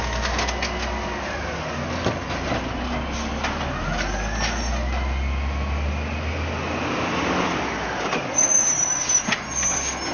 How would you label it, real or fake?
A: real